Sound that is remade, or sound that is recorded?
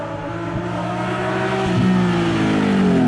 recorded